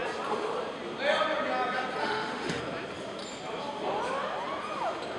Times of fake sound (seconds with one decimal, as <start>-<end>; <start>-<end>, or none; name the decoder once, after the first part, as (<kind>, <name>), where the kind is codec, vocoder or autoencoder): 2.0-2.6 (autoencoder, DAC-VAE)